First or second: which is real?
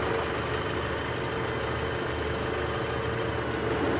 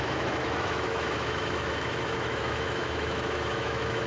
first